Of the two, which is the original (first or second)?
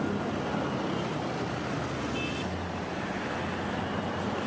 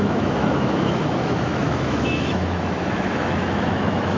first